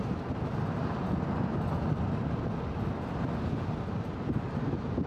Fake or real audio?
real